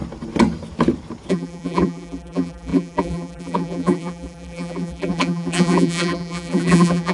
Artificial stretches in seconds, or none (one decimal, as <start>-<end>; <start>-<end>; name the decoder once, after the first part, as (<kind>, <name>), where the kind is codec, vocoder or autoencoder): 1.3-7.1 (vocoder, BigVGAN v2)